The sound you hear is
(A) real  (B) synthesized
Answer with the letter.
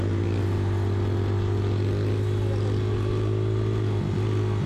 A